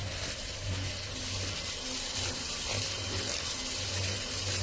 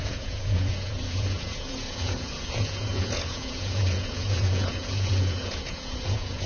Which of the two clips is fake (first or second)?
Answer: second